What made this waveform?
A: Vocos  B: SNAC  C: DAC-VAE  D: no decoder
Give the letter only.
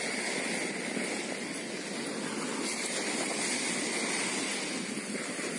D